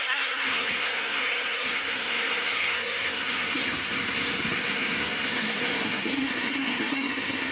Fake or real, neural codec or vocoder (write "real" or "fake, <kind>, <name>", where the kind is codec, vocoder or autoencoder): fake, codec, SNAC